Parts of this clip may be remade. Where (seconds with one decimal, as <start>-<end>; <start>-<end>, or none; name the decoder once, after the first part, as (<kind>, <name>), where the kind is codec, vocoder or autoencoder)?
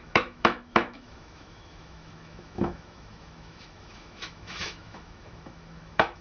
0.0-6.2 (autoencoder, DAC-VAE)